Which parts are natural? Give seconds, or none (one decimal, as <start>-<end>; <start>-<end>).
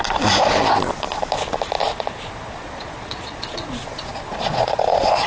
0.0-1.8